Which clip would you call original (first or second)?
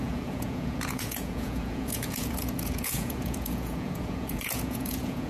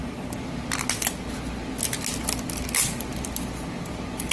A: second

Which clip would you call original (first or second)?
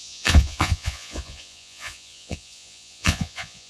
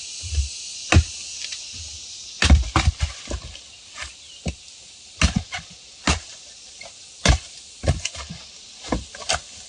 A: second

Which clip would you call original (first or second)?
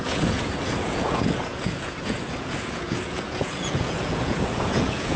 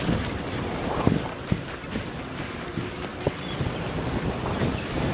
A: second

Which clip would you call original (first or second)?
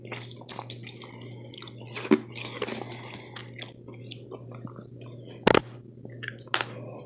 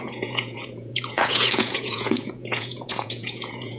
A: first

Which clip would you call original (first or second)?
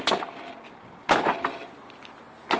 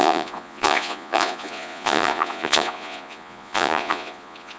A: first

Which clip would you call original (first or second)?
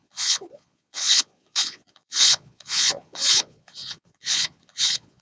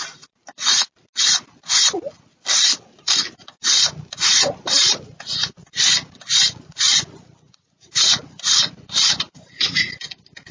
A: second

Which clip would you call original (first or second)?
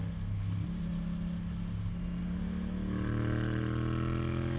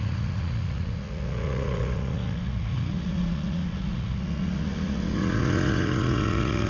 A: first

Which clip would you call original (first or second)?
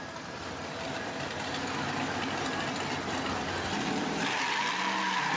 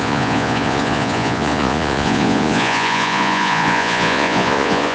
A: first